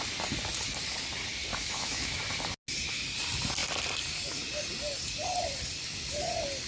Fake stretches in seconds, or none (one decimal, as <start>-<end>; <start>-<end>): 1.5-2.2